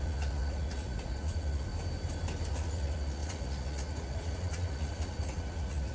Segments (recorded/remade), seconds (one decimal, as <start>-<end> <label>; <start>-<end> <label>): 0.0-1.7 remade; 1.7-2.5 recorded; 2.5-5.9 remade